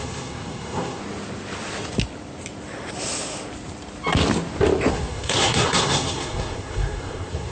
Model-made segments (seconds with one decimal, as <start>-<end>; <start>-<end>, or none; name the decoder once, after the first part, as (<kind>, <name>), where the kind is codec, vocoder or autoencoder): 0.0-1.0 (codec, SNAC); 4.9-7.5